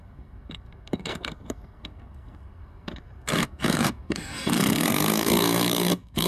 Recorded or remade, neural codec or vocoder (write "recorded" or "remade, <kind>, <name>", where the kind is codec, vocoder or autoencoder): remade, codec, SNAC